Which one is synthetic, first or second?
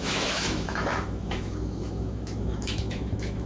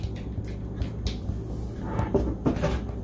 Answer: first